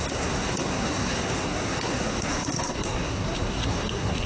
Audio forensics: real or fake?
fake